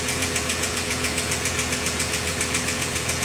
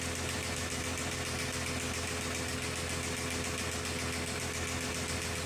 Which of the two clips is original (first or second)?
second